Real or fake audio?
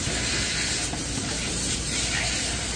real